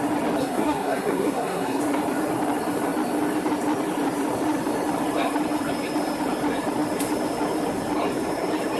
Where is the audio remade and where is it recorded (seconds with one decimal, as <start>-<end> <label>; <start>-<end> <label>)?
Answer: 0.0-0.4 recorded; 0.4-1.8 remade; 1.8-8.8 recorded